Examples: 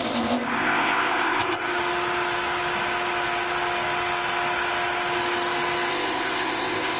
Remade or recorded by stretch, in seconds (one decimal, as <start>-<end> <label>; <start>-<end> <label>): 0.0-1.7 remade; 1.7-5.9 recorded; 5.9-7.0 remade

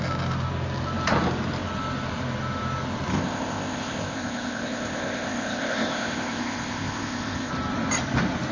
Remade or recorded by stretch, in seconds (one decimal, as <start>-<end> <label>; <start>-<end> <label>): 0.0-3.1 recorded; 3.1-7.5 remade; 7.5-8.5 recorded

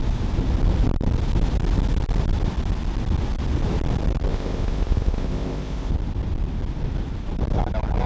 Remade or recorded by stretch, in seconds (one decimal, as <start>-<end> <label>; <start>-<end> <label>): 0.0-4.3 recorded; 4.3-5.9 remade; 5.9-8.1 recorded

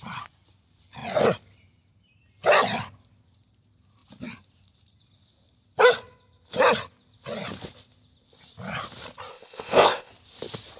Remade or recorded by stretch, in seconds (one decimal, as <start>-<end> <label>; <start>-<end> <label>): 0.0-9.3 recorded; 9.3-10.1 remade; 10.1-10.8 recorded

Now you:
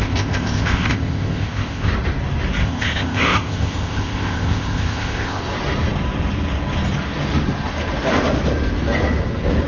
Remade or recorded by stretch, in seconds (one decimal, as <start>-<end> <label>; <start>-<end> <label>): 0.0-1.9 remade; 1.9-2.6 recorded; 2.6-5.4 remade; 5.4-9.7 recorded